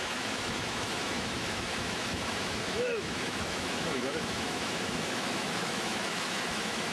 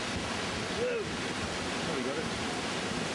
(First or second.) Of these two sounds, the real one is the second